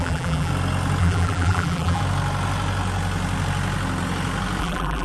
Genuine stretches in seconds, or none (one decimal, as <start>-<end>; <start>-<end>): 0.5-1.0; 2.0-4.6